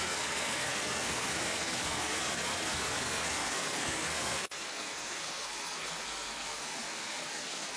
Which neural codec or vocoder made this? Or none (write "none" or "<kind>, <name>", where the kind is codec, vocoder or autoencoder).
codec, SNAC